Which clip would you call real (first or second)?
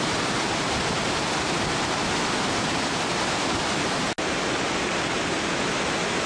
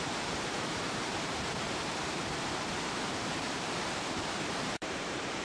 first